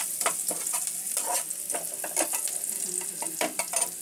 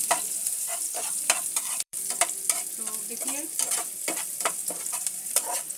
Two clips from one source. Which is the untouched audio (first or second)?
first